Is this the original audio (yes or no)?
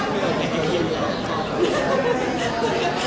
yes